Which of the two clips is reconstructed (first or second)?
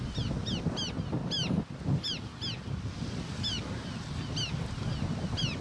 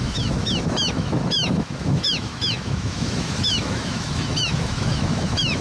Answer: second